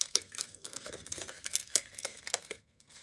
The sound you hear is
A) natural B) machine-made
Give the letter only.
B